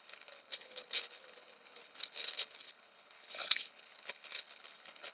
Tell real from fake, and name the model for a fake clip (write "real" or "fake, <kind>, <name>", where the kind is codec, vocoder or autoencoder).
fake, codec, HILCodec